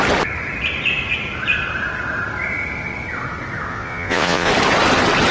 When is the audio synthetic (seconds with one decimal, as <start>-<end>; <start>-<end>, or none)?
3.7-4.5